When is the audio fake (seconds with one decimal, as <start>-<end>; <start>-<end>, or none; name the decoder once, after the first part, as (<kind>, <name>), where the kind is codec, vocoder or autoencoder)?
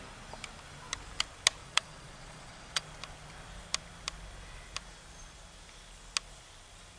1.6-2.8 (vocoder, Vocos)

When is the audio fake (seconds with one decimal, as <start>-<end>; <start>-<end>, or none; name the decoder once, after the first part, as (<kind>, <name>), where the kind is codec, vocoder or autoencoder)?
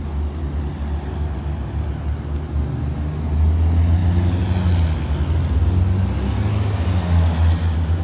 none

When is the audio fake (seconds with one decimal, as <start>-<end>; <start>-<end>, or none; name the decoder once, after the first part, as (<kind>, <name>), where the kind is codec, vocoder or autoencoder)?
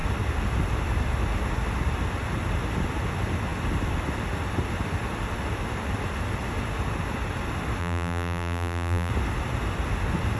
7.8-9.1 (vocoder, BigVGAN v2)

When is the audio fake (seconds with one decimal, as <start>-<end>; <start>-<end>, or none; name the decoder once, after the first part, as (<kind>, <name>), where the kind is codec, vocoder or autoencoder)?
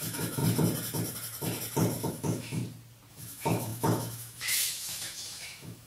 0.0-0.4 (autoencoder, DAC-VAE); 2.1-2.6; 3.1-5.9